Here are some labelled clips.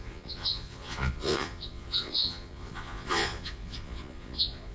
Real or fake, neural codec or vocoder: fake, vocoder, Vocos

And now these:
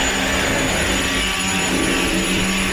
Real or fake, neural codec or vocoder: real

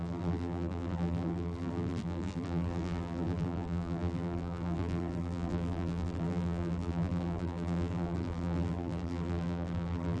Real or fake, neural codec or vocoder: fake, vocoder, BigVGAN v2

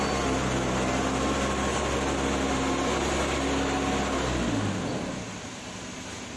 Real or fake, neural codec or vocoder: real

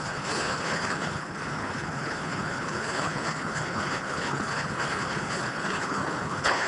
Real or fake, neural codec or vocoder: fake, codec, HILCodec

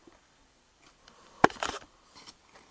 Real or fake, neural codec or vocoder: fake, vocoder, BigVGAN v2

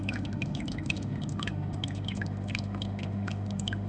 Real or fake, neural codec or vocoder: fake, autoencoder, DAC-VAE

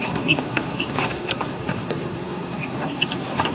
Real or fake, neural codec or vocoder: fake, codec, SNAC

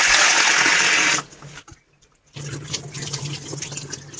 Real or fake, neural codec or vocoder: real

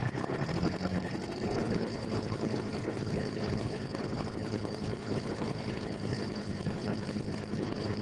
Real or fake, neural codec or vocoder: fake, codec, HILCodec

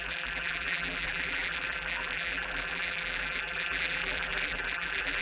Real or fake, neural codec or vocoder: fake, vocoder, BigVGAN v2